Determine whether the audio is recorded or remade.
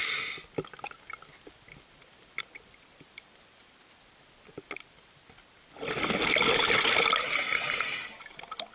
recorded